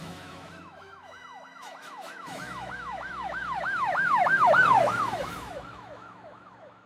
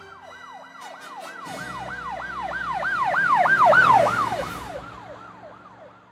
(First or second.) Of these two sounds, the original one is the second